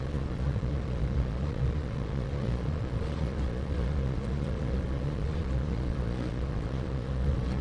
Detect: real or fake fake